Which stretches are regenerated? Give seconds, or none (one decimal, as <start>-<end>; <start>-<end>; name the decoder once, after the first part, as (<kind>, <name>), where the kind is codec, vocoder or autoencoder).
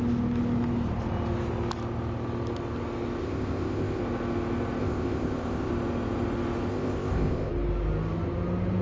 3.2-4.0 (codec, ZipCodec); 4.8-5.7; 6.7-7.5